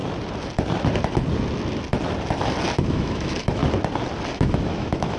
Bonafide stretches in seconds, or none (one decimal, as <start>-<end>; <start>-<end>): 0.0-2.8; 3.6-4.3